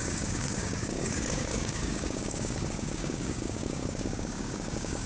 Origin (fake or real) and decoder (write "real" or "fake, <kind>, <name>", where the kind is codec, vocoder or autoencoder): fake, codec, DAC